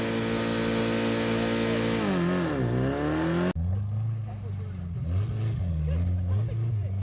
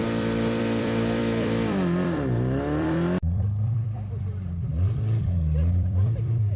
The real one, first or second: first